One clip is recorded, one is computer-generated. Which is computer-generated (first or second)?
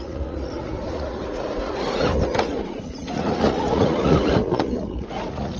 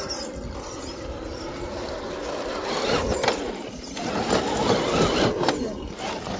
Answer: first